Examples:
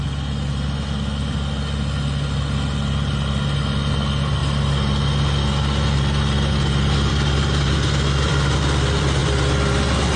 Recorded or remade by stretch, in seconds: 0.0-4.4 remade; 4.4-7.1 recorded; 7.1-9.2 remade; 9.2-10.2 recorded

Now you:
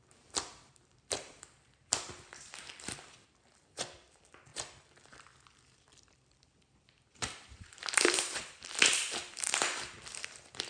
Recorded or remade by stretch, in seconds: 0.0-1.8 remade; 1.8-2.7 recorded; 2.7-4.5 remade; 4.5-5.1 recorded; 5.1-10.7 remade

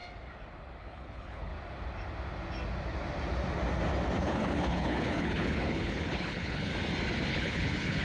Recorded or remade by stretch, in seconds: 0.0-0.8 recorded; 0.8-1.5 remade; 1.5-4.2 recorded; 4.2-6.7 remade; 6.7-7.3 recorded; 7.3-8.0 remade